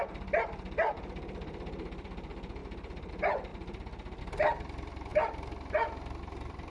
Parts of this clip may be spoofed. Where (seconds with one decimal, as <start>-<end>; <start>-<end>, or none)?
0.0-3.5; 4.2-5.1; 6.2-6.7